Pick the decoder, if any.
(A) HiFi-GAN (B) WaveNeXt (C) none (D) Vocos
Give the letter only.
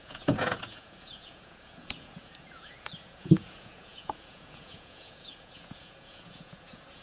D